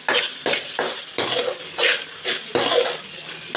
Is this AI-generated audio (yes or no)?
no